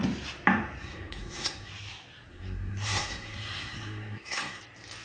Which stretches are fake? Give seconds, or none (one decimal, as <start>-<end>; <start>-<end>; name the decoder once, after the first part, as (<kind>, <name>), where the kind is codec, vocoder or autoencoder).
0.8-1.7 (codec, SNAC); 2.3-4.6